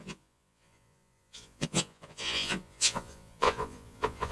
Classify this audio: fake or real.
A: fake